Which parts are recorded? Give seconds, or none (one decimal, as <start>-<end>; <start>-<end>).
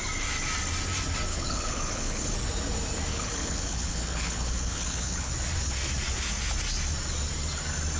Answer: 0.0-1.3; 2.3-3.1; 5.3-8.0